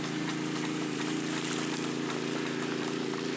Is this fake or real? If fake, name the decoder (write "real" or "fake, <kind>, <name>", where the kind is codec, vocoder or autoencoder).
real